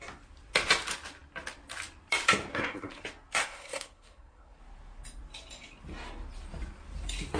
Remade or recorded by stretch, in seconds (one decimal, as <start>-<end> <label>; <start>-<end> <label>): 0.0-2.5 recorded; 2.5-3.0 remade; 3.0-3.4 recorded; 3.4-4.6 remade; 4.6-7.4 recorded